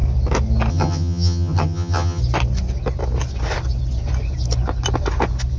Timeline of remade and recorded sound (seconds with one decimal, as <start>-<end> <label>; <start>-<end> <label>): 0.0-0.7 recorded; 0.7-2.2 remade; 2.2-5.6 recorded